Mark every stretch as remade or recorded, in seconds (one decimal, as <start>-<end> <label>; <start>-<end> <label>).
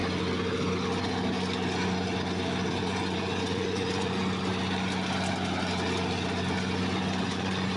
0.0-2.7 recorded; 2.7-4.2 remade; 4.2-7.2 recorded; 7.2-7.8 remade